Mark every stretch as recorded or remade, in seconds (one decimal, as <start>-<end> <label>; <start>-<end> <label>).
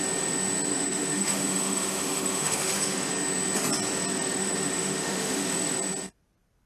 0.0-0.7 recorded; 0.7-3.1 remade; 3.1-4.4 recorded; 4.4-5.4 remade; 5.4-6.7 recorded